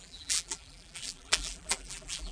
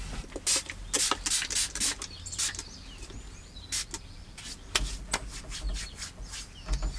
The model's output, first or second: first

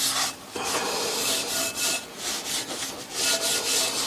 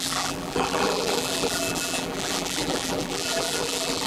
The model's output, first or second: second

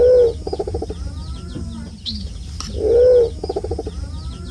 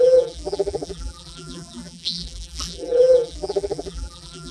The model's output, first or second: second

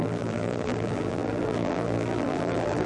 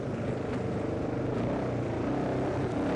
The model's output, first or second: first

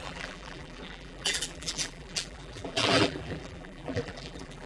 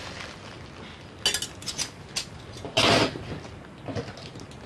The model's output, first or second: first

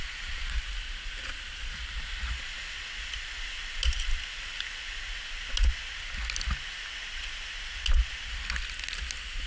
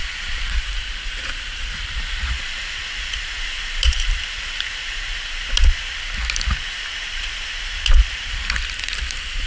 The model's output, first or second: second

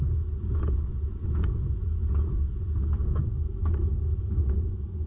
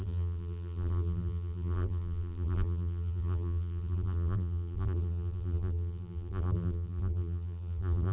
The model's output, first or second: second